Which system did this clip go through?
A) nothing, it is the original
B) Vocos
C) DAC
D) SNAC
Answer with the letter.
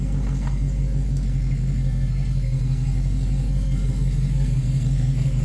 D